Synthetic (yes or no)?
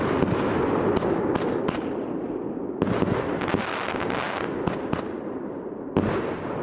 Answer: no